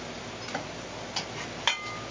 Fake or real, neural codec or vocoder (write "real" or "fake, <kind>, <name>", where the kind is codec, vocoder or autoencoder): real